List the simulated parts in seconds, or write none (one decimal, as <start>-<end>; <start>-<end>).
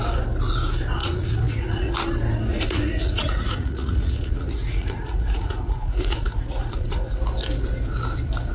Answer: 1.0-1.9; 2.5-7.2